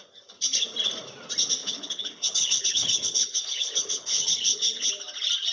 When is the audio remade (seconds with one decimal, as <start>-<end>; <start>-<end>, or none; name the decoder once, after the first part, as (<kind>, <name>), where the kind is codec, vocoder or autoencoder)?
1.6-4.9 (codec, HILCodec)